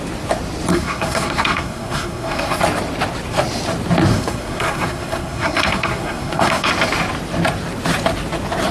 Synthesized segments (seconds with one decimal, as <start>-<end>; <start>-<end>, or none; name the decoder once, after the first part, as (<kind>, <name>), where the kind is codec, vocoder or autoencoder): 0.7-2.6 (codec, SNAC); 4.1-6.7